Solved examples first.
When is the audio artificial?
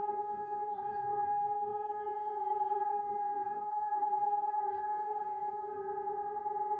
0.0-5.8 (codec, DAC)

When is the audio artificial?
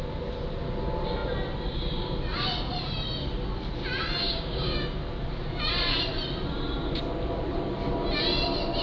4.2-5.0 (codec, DAC)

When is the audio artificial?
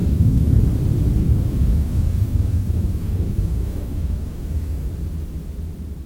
0.0-0.6 (codec, DAC); 1.2-4.9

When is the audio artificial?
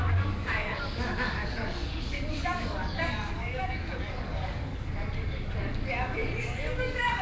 0.0-7.2 (codec, DAC)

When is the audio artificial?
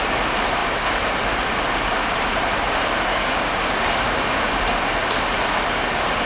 3.1-4.5 (codec, DAC)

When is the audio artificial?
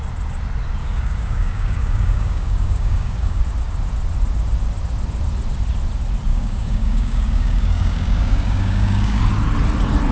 0.8-3.4 (codec, DAC); 6.3-9.2